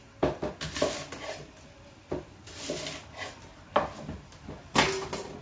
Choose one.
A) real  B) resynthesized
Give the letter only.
A